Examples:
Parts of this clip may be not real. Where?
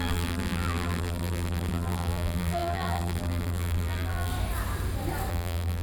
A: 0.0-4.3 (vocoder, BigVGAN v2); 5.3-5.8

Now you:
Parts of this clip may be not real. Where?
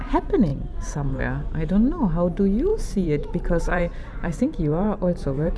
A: 0.5-1.2 (vocoder, BigVGAN v2); 2.7-5.6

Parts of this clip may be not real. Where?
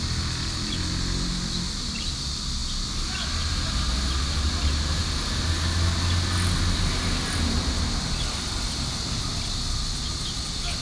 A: none